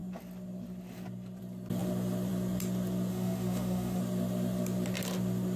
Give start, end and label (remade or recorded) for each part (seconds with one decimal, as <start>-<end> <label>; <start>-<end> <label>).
0.0-3.1 recorded; 3.1-4.0 remade; 4.0-5.6 recorded